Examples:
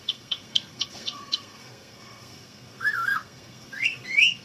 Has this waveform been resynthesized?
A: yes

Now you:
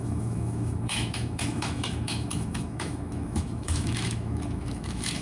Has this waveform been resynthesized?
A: yes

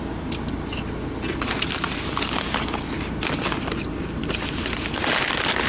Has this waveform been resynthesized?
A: no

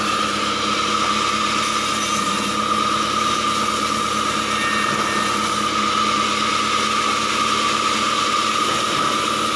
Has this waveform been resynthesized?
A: no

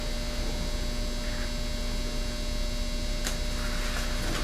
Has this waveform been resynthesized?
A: no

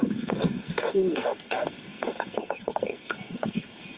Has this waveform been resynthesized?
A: yes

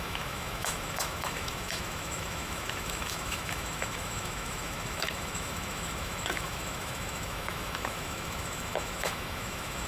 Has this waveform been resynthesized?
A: yes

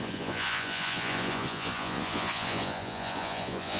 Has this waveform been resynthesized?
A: yes